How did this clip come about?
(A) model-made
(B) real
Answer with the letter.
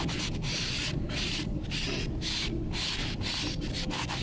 B